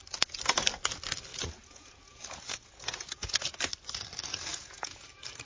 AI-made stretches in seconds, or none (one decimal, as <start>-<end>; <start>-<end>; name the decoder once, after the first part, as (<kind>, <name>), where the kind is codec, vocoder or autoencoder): 1.3-3.6 (vocoder, Vocos); 4.5-5.1